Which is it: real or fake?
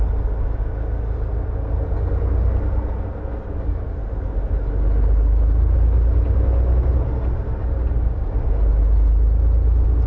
real